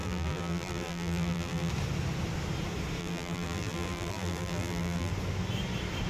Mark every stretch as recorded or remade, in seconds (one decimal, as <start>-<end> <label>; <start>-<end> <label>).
0.0-1.7 remade; 1.7-3.0 recorded; 3.0-5.1 remade; 5.1-6.1 recorded